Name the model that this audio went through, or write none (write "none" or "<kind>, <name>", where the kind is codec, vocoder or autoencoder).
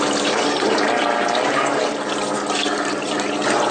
none